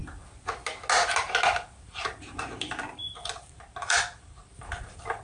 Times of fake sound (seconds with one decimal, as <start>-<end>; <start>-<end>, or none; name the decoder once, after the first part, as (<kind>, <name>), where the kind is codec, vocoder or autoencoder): 1.2-5.2 (vocoder, BigVGAN v2)